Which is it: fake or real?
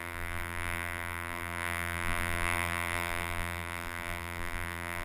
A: fake